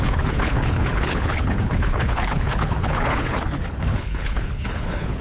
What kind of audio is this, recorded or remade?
remade